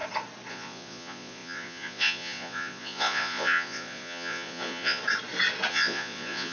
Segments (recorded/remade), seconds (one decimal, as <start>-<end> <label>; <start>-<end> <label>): 0.0-0.5 recorded; 0.5-5.0 remade; 5.0-5.7 recorded; 5.7-6.5 remade